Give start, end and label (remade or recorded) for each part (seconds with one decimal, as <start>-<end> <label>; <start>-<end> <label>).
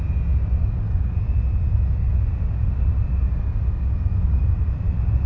0.0-5.3 recorded